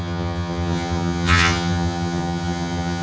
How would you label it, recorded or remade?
remade